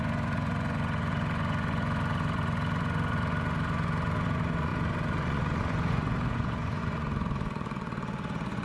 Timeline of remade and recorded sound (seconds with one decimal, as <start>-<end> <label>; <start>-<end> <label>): 0.0-8.6 remade